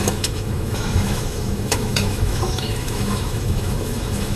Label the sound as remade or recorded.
remade